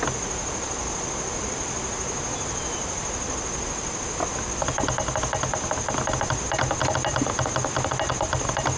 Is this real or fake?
real